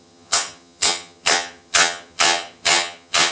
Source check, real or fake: fake